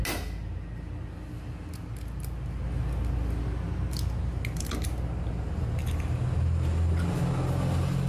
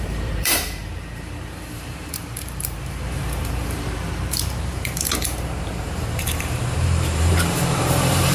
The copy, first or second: second